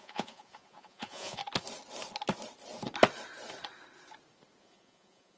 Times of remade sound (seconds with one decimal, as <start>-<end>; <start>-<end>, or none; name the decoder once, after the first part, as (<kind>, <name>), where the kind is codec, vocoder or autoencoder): 0.0-1.4 (vocoder, Vocos); 4.6-5.4